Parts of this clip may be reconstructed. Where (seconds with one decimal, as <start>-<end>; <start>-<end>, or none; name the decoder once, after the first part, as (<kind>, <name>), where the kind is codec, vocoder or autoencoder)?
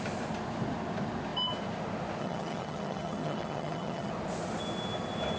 2.2-4.1 (vocoder, HiFi-GAN)